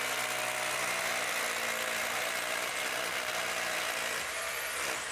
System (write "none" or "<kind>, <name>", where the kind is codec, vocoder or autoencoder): none